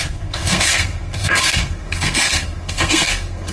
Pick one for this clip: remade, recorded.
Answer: remade